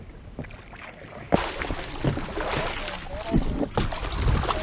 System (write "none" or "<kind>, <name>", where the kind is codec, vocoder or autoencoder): none